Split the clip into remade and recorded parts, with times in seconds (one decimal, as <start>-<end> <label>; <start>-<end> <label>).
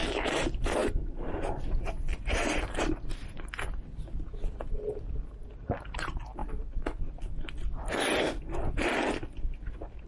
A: 0.0-0.8 recorded; 0.8-2.6 remade; 2.6-10.1 recorded